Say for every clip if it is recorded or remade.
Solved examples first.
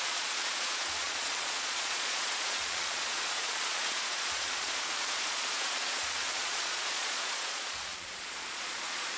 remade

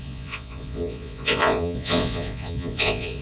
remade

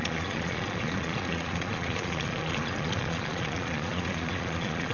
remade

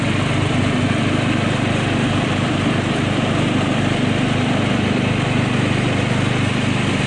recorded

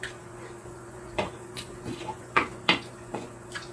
remade